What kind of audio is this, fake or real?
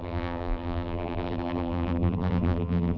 fake